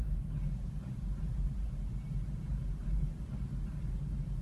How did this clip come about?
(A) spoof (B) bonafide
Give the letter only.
B